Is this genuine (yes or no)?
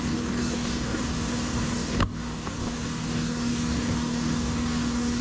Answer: no